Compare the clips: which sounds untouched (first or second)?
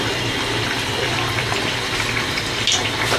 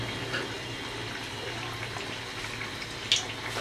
second